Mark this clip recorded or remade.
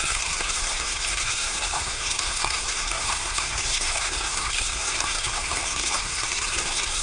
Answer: remade